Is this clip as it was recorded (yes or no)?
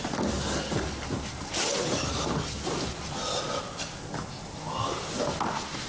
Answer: yes